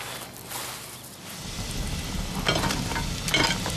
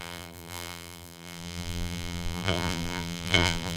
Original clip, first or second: first